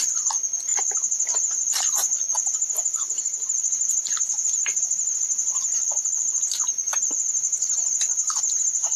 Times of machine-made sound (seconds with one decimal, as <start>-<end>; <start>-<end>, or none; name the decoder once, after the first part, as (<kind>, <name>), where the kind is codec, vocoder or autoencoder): 0.0-5.8 (vocoder, BigVGAN v2); 6.4-9.0